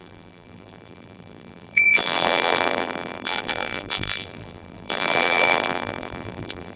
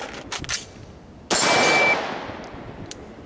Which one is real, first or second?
second